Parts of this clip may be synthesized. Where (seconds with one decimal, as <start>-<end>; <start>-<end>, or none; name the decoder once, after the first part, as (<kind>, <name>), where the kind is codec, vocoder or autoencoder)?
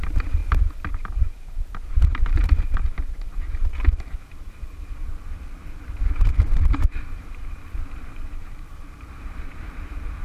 0.0-0.4 (vocoder, BigVGAN v2); 0.9-10.2